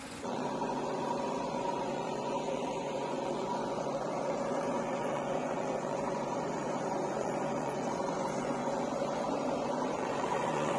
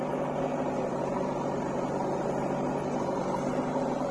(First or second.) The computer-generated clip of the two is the first